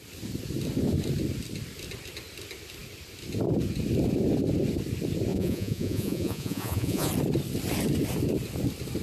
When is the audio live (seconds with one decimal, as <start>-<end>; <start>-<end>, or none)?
0.0-5.3; 7.1-9.0